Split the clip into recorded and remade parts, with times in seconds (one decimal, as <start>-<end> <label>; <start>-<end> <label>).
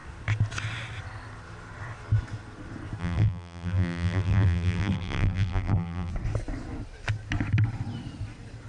0.0-3.0 recorded; 3.0-6.1 remade; 6.1-8.7 recorded